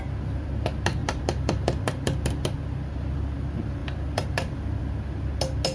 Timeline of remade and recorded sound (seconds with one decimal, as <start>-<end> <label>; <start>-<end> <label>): 0.0-1.0 recorded; 1.0-2.6 remade; 2.6-3.8 recorded; 3.8-4.8 remade; 4.8-5.7 recorded